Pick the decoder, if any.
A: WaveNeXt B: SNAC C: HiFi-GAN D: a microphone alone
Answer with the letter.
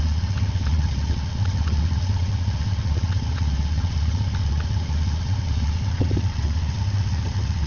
A